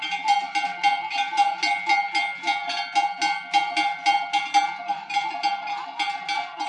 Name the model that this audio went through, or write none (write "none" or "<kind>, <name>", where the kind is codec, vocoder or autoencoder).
none